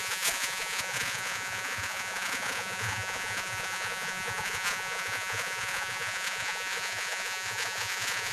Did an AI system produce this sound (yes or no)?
yes